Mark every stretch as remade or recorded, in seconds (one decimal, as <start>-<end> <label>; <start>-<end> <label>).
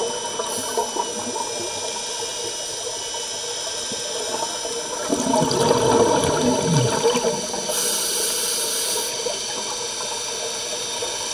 0.0-11.3 recorded